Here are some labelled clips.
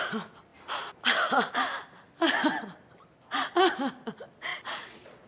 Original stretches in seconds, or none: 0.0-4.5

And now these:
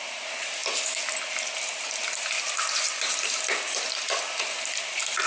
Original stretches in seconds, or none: 0.6-2.1